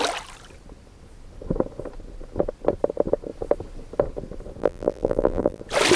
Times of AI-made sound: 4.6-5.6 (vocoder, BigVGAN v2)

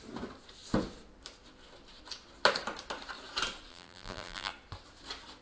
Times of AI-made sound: 3.7-4.5 (vocoder, BigVGAN v2)

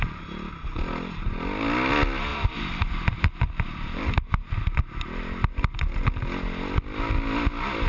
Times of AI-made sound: 2.3-4.3 (vocoder, BigVGAN v2)

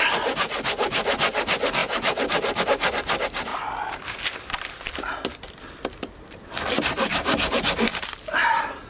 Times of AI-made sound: 3.5-5.8 (vocoder, BigVGAN v2); 7.1-7.6

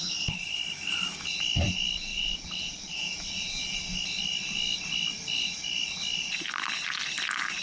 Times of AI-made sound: none

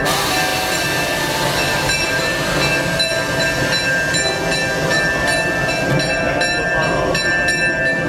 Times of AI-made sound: none